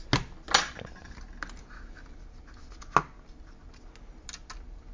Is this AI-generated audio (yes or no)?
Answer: no